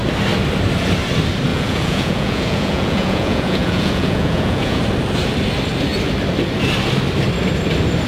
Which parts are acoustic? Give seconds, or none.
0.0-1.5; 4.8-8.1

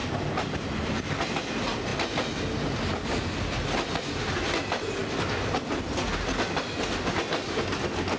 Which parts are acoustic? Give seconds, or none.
0.0-8.2

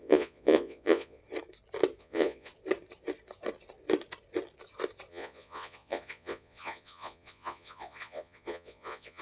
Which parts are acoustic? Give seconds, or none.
1.2-2.0; 2.5-5.1

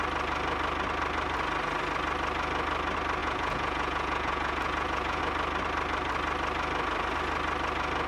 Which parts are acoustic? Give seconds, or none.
0.0-3.2; 5.2-8.1

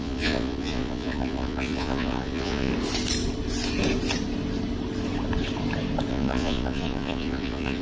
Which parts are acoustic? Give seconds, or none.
2.7-6.1

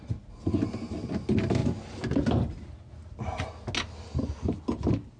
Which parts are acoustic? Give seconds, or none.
0.0-5.2

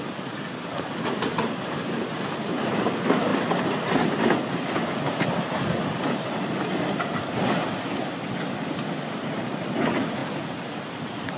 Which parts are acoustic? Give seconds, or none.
0.0-11.4

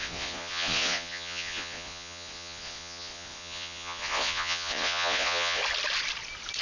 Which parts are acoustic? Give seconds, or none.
5.6-6.6